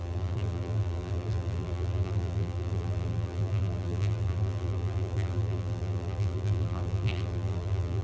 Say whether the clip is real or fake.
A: fake